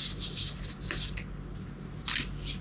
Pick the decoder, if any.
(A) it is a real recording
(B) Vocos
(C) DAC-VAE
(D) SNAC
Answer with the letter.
A